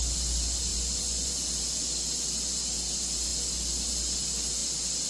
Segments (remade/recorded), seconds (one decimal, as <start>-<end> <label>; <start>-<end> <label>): 0.0-0.7 recorded; 0.7-1.3 remade; 1.3-5.1 recorded